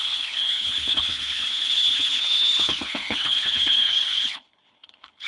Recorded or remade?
remade